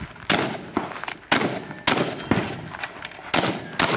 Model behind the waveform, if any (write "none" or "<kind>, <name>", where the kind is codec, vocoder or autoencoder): none